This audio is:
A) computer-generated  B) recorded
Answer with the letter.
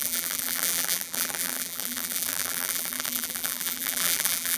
A